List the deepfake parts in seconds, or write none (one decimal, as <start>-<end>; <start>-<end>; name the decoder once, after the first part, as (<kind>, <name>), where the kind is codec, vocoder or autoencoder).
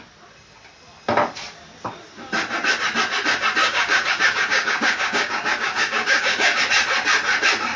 3.6-6.6 (codec, DAC)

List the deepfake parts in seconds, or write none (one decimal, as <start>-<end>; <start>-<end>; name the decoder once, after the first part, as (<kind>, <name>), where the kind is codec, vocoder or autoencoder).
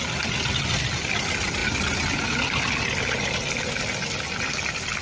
none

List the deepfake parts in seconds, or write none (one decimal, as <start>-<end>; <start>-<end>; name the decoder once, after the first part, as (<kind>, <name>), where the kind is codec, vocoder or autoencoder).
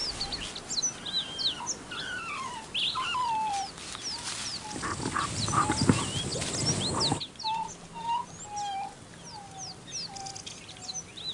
none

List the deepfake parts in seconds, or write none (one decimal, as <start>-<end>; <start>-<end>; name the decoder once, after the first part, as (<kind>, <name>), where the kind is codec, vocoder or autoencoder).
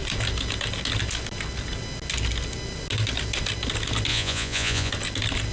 4.1-4.9 (vocoder, Vocos)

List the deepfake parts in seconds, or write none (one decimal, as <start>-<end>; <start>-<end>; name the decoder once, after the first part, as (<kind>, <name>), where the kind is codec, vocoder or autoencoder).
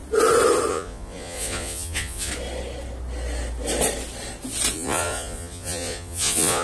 0.7-2.3 (vocoder, Vocos); 4.7-6.6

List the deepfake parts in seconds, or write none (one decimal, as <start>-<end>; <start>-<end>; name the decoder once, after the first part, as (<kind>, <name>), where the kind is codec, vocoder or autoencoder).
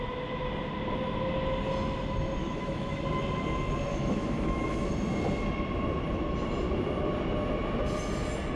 2.4-3.0 (autoencoder, DAC-VAE); 3.9-4.9